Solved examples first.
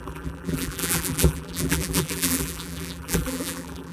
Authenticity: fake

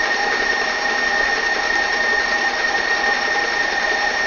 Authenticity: real